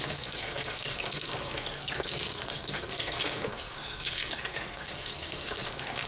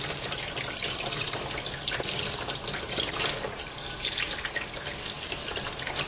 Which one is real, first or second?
second